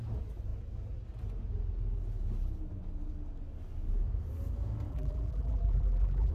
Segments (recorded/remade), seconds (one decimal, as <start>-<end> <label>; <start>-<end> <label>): 0.0-4.9 recorded; 4.9-6.3 remade